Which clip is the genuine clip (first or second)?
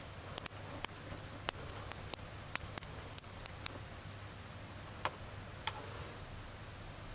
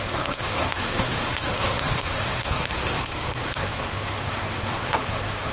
first